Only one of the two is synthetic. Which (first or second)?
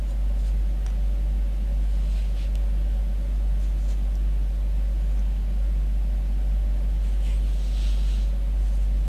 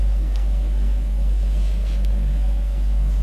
second